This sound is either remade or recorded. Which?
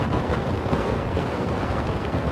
remade